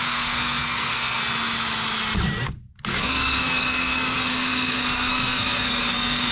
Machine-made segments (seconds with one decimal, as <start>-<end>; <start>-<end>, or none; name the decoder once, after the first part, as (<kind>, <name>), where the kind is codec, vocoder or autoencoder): 0.0-1.2 (codec, SNAC); 2.9-6.3